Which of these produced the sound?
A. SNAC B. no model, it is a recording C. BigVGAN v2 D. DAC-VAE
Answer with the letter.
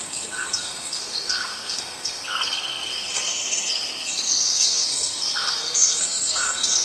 A